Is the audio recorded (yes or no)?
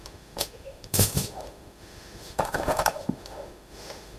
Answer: no